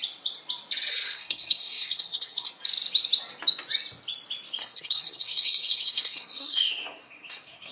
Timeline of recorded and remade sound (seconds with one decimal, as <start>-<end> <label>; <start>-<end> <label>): 0.0-0.9 recorded; 0.9-2.5 remade; 2.5-4.6 recorded; 4.6-7.7 remade